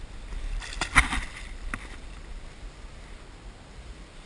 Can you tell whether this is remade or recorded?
recorded